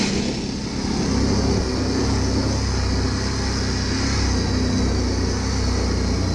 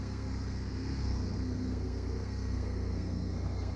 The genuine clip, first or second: first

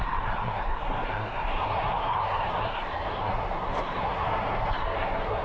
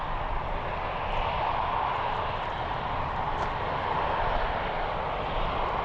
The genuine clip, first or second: second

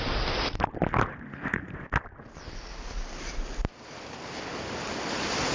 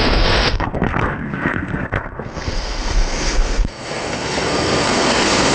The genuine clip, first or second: first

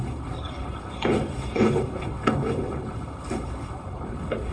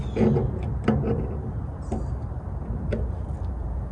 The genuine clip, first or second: second